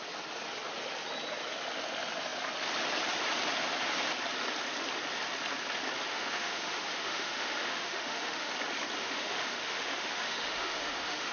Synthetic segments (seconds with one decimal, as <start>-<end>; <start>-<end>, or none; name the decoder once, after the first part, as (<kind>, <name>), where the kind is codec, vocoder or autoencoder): 6.1-8.5 (autoencoder, DAC-VAE); 9.0-11.3